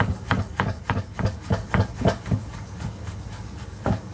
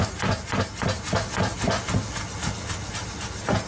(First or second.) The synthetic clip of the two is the first